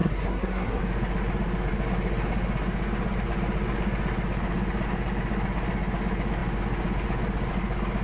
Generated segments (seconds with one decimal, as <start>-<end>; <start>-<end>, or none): 0.0-0.8